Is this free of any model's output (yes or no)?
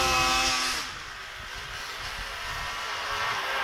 yes